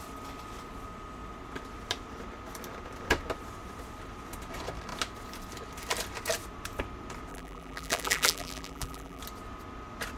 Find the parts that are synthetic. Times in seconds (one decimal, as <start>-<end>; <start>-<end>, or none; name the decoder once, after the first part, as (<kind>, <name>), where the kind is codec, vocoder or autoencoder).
7.3-9.2 (vocoder, BigVGAN v2)

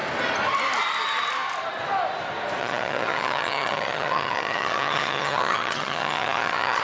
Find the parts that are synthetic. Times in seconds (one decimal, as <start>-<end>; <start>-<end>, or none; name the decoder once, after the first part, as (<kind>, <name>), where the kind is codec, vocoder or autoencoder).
2.6-6.8 (vocoder, HiFi-GAN)

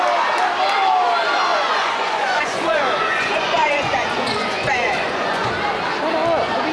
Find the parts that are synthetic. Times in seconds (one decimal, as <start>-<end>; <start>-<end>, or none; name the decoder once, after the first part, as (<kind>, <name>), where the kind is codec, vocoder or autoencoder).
1.5-5.5 (vocoder, Vocos)